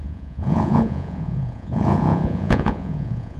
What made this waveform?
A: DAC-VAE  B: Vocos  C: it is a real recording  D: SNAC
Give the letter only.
B